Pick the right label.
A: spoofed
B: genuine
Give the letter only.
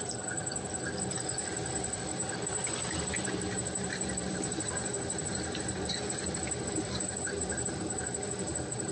A